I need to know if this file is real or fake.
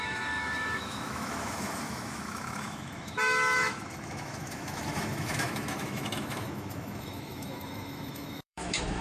fake